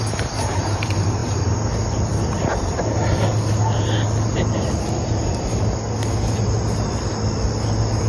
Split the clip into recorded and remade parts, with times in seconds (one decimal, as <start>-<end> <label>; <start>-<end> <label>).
0.0-8.1 recorded

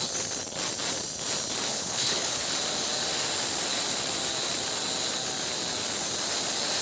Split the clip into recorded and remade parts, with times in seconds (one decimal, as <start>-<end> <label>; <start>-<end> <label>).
0.0-1.7 recorded; 1.7-2.5 remade; 2.5-6.8 recorded